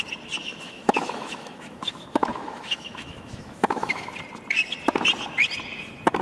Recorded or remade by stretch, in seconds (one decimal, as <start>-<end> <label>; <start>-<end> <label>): 0.0-0.4 recorded; 0.4-4.1 remade; 4.1-6.2 recorded